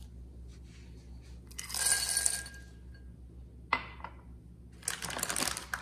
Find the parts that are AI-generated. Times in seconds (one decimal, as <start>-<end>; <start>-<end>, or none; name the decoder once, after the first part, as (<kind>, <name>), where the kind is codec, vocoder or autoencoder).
none